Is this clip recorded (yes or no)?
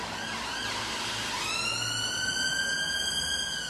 yes